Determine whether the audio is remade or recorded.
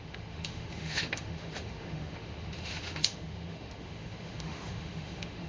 remade